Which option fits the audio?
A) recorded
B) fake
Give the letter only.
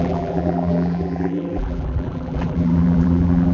B